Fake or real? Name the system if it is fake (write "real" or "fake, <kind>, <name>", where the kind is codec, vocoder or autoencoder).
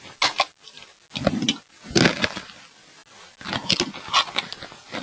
real